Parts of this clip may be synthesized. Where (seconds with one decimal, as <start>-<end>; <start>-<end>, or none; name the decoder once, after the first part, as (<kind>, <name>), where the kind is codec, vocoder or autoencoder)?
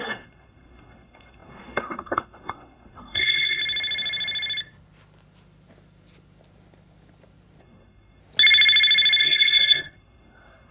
0.0-3.6 (codec, SNAC); 7.6-8.2; 9.2-10.7